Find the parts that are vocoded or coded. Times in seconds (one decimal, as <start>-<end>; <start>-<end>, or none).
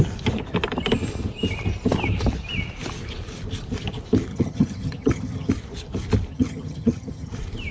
4.3-5.5; 6.3-7.3